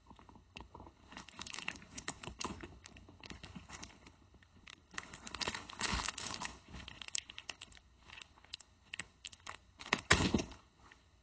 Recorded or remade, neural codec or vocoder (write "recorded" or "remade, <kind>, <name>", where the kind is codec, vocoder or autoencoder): remade, codec, HILCodec